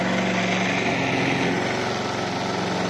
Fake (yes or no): no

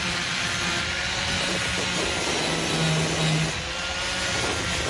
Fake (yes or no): no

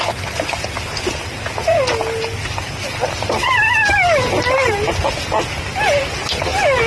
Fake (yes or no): no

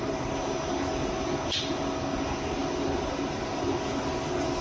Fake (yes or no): no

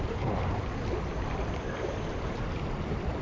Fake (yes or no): yes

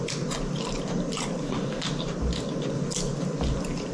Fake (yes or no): no